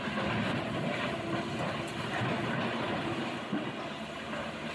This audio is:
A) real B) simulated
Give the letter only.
A